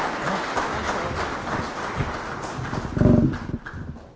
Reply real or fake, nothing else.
real